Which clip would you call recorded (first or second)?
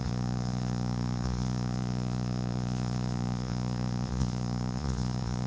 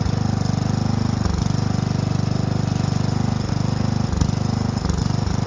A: second